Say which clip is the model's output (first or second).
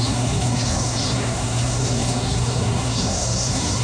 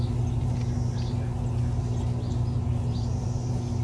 first